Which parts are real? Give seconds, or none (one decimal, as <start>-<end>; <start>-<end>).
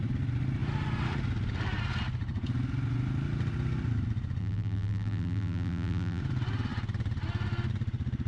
0.0-4.4; 6.2-8.3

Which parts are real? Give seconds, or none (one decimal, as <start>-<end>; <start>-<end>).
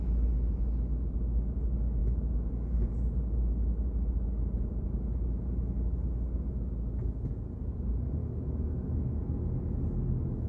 0.0-8.2; 9.3-10.5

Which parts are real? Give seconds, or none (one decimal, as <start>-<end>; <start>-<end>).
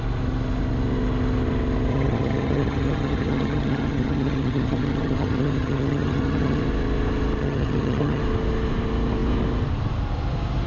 0.0-1.9; 6.6-7.4; 8.2-10.7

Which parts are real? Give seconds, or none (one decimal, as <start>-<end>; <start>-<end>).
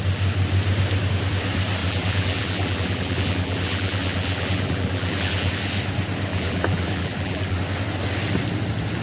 0.0-1.8; 5.5-6.3; 7.6-9.0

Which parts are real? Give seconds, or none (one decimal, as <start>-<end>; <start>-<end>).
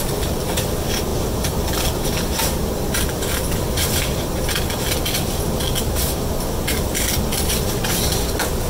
0.0-8.7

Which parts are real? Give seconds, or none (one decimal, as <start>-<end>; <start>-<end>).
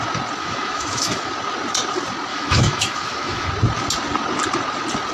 0.0-0.4; 1.3-2.3; 3.5-5.1